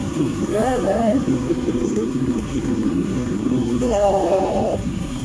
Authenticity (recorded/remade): remade